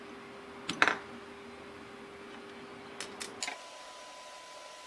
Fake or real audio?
real